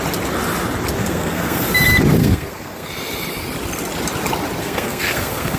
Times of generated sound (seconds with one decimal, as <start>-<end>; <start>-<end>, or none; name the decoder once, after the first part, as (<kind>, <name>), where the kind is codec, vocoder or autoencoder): 1.0-1.8 (codec, SNAC); 2.2-2.9; 4.6-5.6